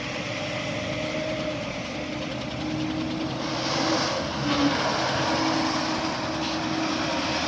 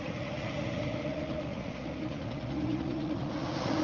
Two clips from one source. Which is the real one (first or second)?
first